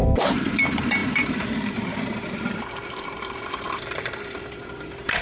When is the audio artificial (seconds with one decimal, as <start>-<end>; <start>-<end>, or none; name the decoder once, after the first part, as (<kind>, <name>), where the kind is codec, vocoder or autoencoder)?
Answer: 0.0-5.2 (vocoder, BigVGAN v2)